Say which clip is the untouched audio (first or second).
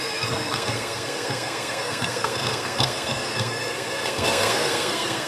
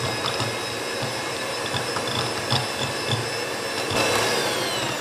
second